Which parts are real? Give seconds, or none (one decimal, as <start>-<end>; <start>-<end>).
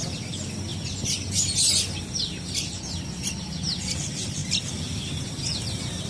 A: 0.0-6.1